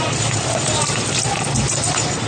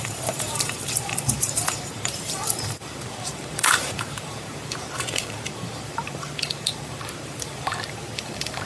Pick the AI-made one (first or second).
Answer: second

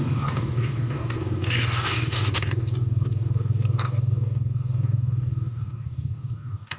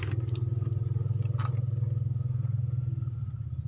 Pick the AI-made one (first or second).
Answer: first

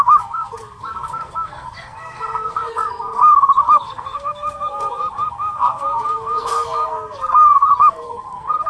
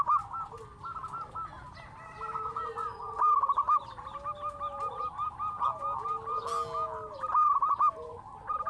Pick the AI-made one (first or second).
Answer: first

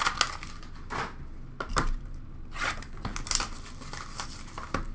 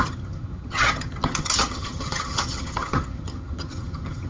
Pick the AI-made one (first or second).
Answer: second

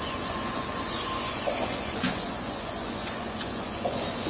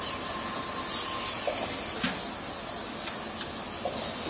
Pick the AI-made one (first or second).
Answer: first